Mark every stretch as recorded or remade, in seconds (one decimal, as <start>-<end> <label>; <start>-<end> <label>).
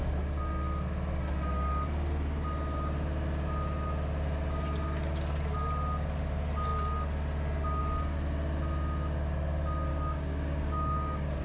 0.0-9.9 recorded; 9.9-11.4 remade